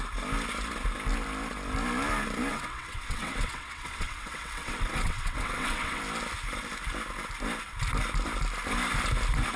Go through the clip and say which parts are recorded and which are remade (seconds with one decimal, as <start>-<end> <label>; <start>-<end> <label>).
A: 0.0-2.5 recorded; 2.5-6.0 remade; 6.0-9.6 recorded